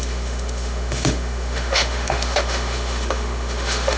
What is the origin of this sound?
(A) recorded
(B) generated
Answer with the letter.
B